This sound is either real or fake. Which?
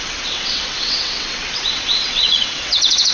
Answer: fake